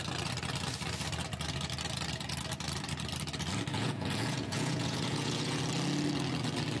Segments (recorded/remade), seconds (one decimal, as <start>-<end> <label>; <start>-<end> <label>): 0.0-3.7 recorded; 3.7-5.6 remade; 5.6-6.8 recorded